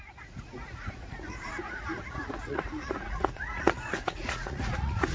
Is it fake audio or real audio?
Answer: fake